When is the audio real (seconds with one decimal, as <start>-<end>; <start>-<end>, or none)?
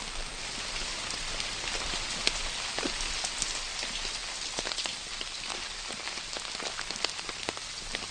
0.0-8.1